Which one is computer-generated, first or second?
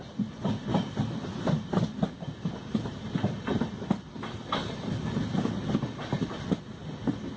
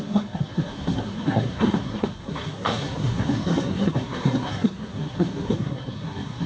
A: second